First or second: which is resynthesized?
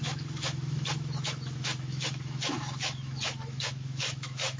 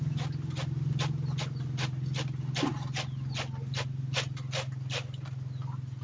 first